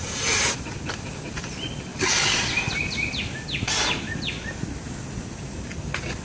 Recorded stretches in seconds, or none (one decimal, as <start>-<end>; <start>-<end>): 0.0-6.2

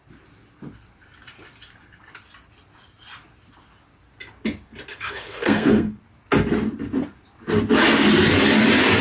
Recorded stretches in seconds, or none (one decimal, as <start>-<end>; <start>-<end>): 0.0-4.9; 6.0-9.0

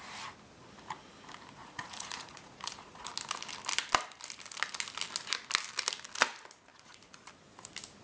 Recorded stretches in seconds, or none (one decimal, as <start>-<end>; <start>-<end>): 0.0-1.6; 3.1-6.7; 7.3-8.0

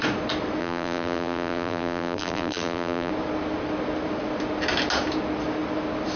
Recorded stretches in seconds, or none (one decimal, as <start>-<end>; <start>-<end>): 0.0-0.6; 3.1-6.2